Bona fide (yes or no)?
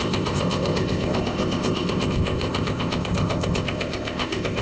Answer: no